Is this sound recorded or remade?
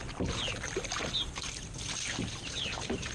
recorded